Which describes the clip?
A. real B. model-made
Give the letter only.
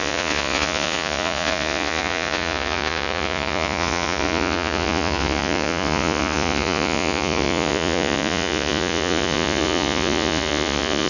B